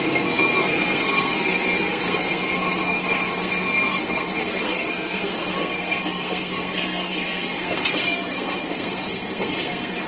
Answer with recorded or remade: remade